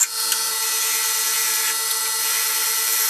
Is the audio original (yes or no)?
yes